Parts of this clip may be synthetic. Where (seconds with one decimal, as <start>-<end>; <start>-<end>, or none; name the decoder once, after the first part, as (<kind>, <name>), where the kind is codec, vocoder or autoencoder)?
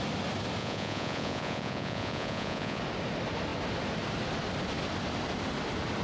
0.6-2.8 (vocoder, Vocos)